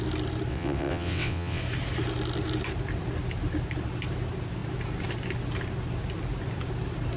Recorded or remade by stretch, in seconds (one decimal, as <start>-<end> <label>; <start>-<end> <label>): 0.0-0.5 recorded; 0.5-1.6 remade; 1.6-7.2 recorded